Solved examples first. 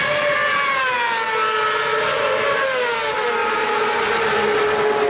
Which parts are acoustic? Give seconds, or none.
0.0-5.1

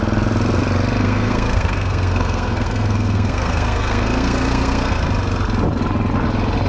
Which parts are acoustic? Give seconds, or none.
0.0-1.0; 5.0-6.7

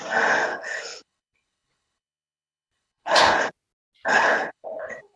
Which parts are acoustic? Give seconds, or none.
0.0-0.5; 3.4-4.1

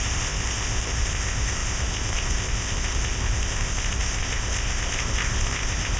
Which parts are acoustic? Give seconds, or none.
none

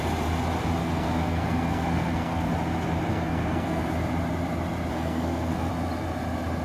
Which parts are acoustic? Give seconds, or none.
0.0-0.8; 2.5-3.1; 3.8-4.9; 5.7-6.6

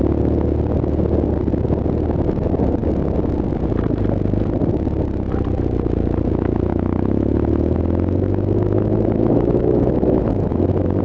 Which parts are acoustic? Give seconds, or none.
0.0-6.7

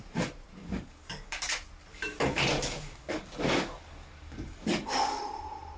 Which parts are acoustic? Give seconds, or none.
0.0-0.6; 1.5-1.9; 5.2-5.8

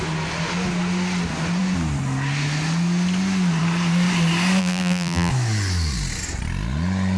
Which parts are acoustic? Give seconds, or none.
0.0-4.6; 5.3-7.2